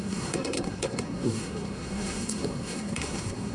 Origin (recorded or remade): remade